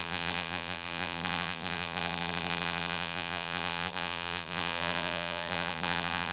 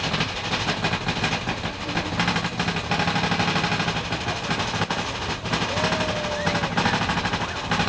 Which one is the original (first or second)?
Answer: second